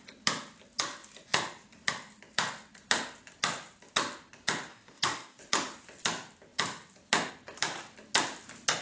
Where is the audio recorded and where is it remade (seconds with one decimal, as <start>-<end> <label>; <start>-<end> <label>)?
0.0-4.7 recorded; 4.7-5.4 remade; 5.4-8.8 recorded